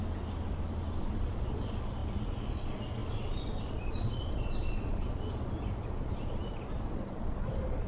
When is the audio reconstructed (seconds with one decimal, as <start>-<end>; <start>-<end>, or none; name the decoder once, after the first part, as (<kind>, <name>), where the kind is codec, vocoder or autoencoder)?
1.0-7.9 (vocoder, Vocos)